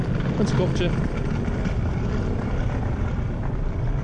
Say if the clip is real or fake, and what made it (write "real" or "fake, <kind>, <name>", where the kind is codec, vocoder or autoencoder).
real